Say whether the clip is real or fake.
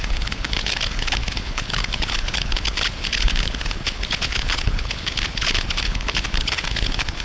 fake